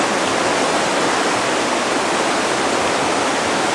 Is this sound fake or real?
real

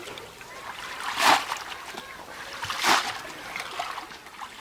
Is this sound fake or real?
real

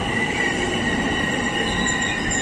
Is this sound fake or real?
fake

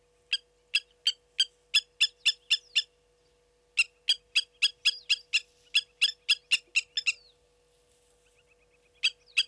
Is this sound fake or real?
real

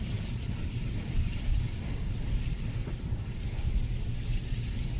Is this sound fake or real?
real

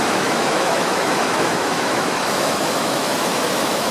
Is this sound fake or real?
fake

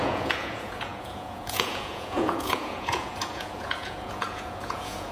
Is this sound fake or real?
fake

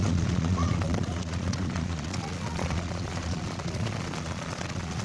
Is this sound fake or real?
fake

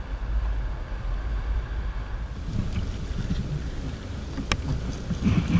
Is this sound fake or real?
real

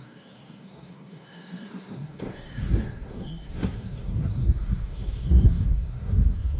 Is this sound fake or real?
fake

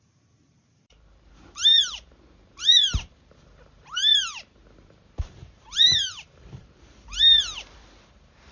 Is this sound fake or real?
fake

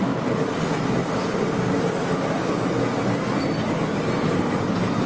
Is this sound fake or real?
real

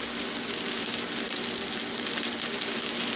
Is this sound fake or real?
real